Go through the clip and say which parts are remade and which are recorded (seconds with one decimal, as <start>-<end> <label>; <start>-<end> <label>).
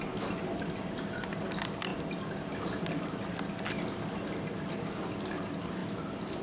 0.0-6.4 recorded